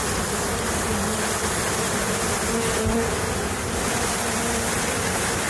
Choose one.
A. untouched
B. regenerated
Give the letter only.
A